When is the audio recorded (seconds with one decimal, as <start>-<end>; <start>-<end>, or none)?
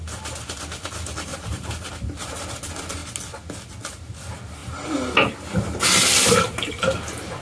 0.0-1.3; 1.9-7.4